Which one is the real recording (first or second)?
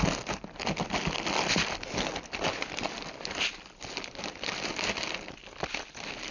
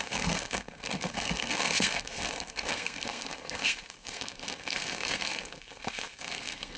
first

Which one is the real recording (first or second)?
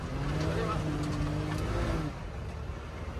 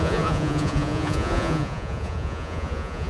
first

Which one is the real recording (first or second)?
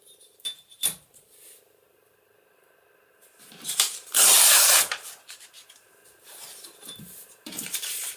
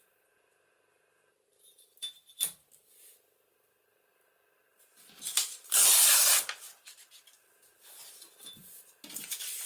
second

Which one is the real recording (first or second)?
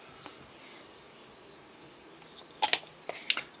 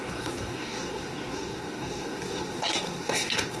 first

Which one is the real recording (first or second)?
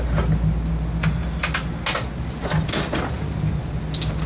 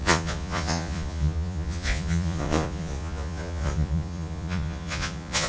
first